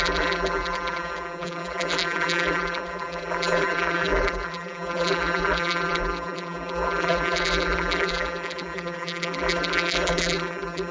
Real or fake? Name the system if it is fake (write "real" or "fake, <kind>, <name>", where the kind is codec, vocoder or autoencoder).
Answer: fake, vocoder, BigVGAN v2